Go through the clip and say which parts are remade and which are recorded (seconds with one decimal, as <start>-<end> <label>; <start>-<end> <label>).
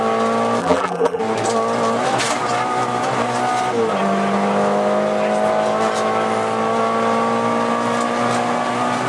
0.0-0.6 recorded; 0.6-1.2 remade; 1.2-9.1 recorded